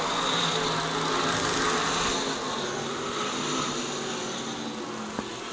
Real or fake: real